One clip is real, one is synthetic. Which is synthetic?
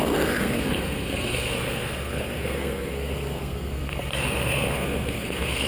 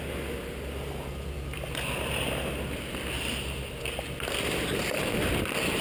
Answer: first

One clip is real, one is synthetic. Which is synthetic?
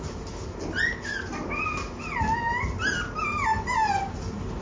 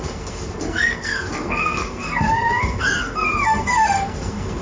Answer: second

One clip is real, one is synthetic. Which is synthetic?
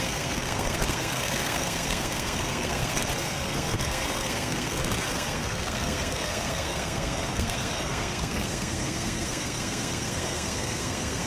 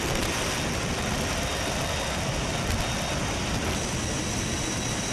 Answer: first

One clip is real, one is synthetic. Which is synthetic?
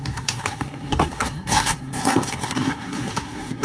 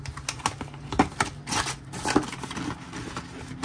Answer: first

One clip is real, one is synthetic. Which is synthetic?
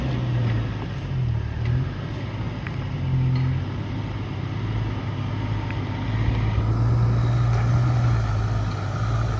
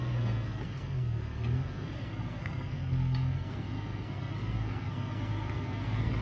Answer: second